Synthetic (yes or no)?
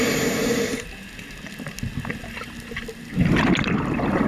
no